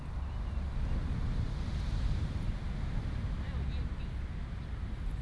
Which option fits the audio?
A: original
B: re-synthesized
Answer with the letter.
A